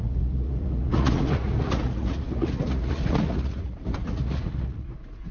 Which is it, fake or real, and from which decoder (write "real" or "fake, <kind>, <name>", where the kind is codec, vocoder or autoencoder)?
fake, vocoder, Vocos